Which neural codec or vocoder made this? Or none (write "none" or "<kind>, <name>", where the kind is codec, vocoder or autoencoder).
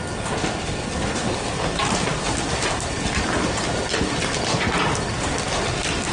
none